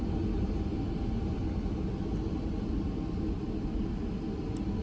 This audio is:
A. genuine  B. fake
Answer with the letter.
A